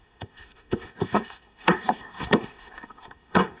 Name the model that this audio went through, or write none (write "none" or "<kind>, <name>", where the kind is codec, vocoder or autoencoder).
codec, SNAC